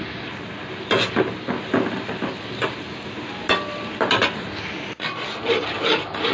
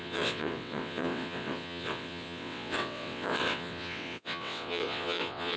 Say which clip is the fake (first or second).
second